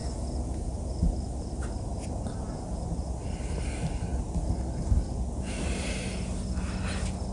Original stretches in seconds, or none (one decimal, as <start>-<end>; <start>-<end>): 4.1-7.3